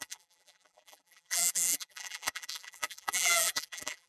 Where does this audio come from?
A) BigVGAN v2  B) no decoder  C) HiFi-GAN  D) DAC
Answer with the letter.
A